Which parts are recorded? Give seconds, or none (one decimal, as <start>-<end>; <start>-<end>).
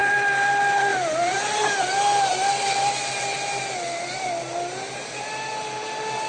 0.0-6.3